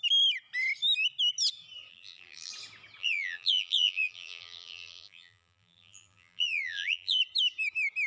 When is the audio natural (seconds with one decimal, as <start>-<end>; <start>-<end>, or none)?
0.0-1.9; 2.5-3.0; 7.2-8.1